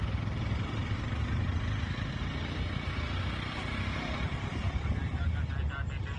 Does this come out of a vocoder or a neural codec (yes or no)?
no